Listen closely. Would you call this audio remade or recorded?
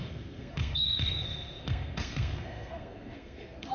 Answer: remade